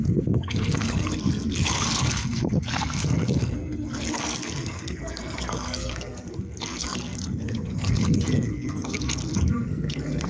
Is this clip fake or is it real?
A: fake